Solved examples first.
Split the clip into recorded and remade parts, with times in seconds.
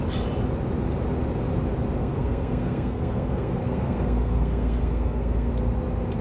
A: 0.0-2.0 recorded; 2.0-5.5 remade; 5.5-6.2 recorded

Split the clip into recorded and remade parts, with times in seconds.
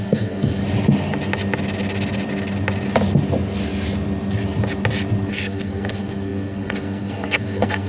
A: 0.0-0.6 remade; 0.6-5.3 recorded; 5.3-7.9 remade